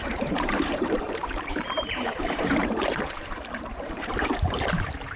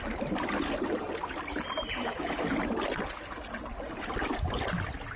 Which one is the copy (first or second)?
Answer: first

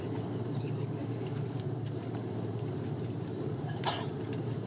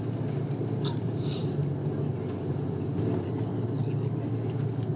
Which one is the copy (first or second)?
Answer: first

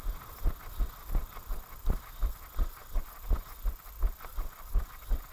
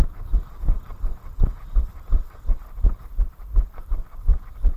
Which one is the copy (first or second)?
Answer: second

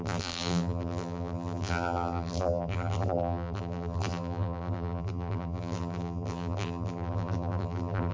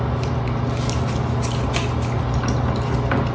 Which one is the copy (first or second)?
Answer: first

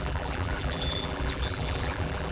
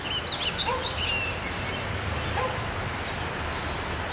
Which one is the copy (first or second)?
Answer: first